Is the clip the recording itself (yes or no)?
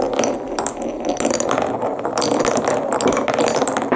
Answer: yes